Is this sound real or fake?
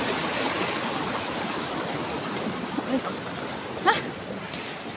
real